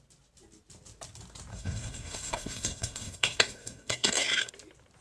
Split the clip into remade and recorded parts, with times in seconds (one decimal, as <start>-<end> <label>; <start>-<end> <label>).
0.0-1.5 recorded; 1.5-4.5 remade; 4.5-5.0 recorded

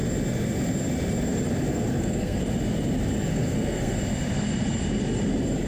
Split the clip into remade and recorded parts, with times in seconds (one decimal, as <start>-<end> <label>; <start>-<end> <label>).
0.0-1.7 recorded; 1.7-2.4 remade; 2.4-3.3 recorded; 3.3-4.0 remade; 4.0-5.7 recorded